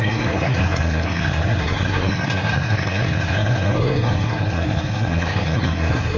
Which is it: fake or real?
fake